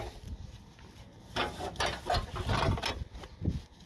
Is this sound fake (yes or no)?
no